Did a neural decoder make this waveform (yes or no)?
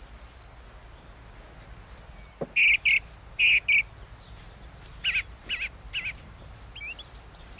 no